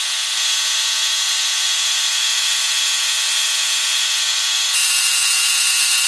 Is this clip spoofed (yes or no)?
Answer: yes